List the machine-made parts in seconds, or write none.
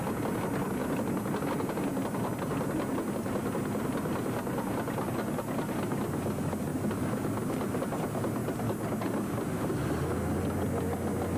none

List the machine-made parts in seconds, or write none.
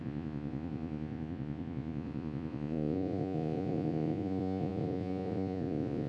0.0-6.1 (vocoder, Vocos)